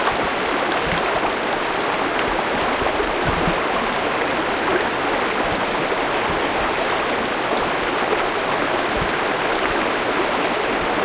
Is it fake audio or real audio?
real